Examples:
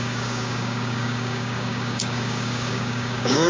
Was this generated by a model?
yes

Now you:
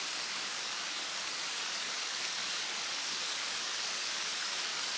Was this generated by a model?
yes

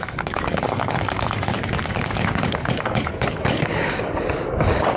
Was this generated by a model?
yes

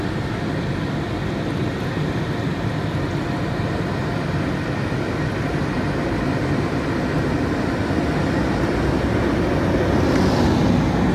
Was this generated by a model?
no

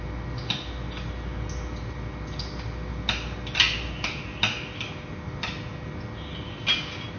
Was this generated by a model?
no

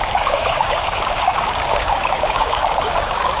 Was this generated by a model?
yes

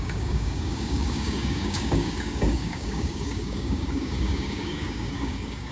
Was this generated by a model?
yes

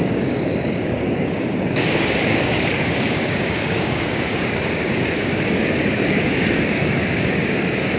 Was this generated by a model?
yes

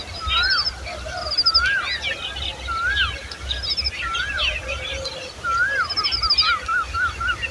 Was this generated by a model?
no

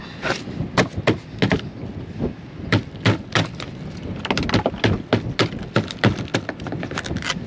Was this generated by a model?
no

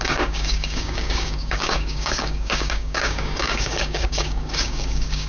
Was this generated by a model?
yes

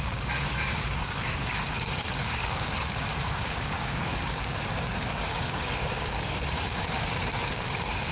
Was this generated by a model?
yes